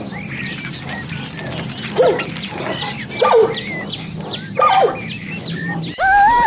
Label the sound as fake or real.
real